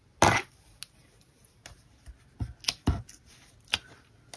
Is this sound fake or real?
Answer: real